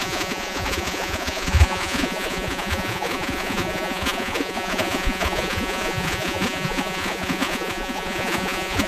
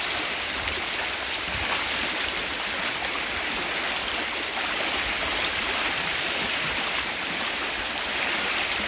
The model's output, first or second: first